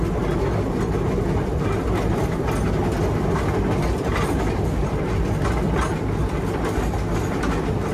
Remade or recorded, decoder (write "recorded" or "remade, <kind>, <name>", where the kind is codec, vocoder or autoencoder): recorded